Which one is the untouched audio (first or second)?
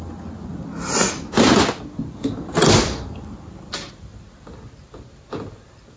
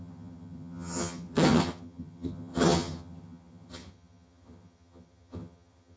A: first